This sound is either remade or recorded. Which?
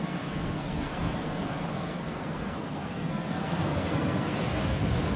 remade